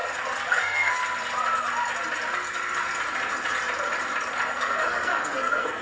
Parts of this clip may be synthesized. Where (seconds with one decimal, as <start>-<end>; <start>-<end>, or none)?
0.5-1.0; 4.5-5.8